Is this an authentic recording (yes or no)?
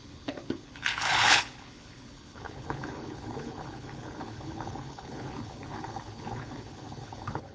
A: no